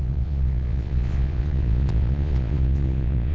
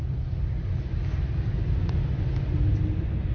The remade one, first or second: first